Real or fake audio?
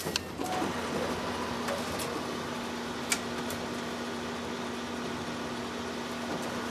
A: real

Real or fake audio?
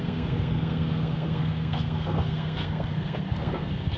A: fake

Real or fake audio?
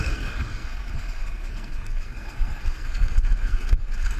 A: fake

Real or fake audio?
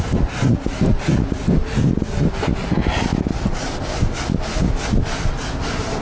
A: real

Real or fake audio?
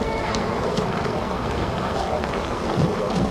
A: fake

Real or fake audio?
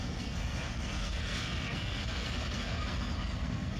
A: fake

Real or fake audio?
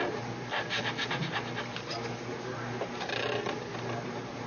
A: real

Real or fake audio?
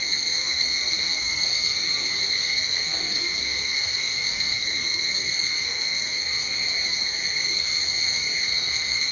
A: fake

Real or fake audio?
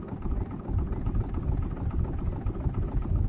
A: real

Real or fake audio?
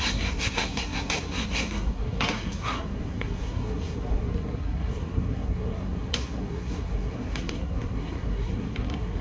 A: fake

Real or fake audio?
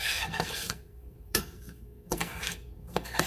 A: fake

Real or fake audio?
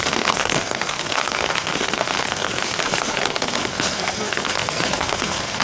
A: fake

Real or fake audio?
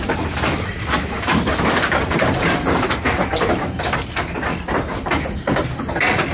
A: real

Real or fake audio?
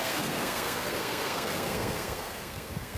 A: fake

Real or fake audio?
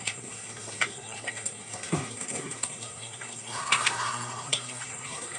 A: fake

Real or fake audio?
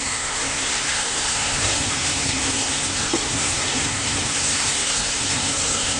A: fake